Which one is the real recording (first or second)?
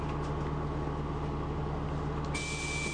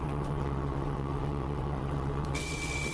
first